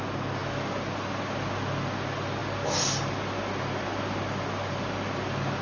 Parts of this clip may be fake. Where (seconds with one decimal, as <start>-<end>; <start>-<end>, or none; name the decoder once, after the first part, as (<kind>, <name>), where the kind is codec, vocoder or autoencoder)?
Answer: none